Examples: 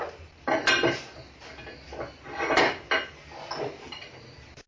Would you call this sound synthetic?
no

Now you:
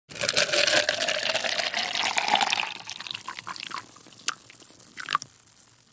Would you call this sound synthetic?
no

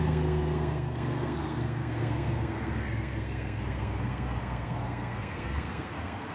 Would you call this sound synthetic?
yes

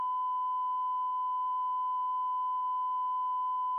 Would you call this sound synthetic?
no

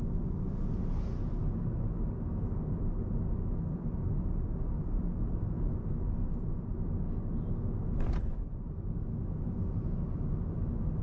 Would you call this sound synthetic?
no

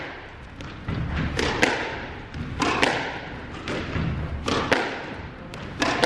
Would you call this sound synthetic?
no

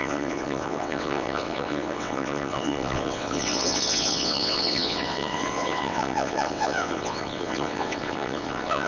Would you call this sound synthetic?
yes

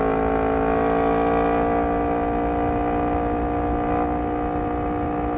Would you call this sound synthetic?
no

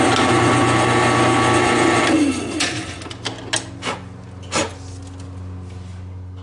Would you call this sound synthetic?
no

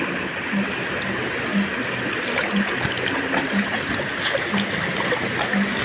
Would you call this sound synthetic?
no